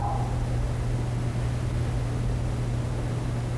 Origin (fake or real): real